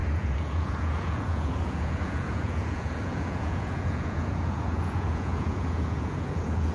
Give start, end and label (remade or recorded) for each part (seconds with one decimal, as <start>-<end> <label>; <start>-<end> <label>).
0.0-6.7 remade